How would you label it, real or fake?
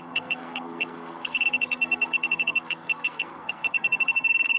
fake